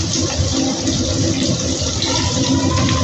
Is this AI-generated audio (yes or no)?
yes